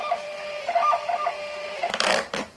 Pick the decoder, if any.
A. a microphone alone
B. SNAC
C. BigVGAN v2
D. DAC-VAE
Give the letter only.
C